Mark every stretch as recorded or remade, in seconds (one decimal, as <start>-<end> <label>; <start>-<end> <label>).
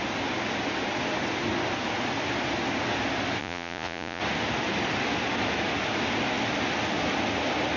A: 0.0-3.4 recorded; 3.4-4.2 remade; 4.2-7.8 recorded